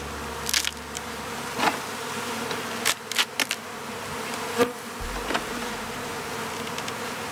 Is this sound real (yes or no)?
yes